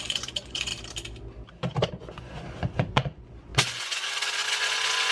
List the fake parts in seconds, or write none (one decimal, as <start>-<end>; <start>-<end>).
0.0-0.7; 1.9-5.1